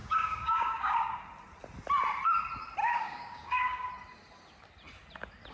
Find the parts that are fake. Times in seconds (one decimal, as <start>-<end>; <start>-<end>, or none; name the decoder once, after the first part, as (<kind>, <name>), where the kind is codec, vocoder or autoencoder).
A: 0.0-1.2 (codec, DAC); 2.8-3.9